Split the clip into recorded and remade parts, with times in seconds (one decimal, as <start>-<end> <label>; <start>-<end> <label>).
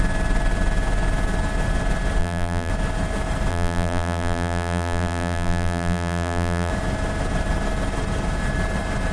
0.0-2.2 recorded; 2.2-2.7 remade; 2.7-3.5 recorded; 3.5-6.7 remade; 6.7-9.1 recorded